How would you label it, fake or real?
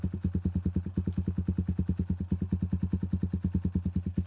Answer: real